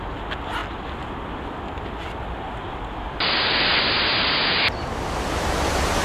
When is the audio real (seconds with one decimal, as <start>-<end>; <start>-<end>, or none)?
0.0-6.0